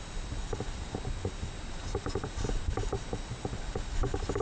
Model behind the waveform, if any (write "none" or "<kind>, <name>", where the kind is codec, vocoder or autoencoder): none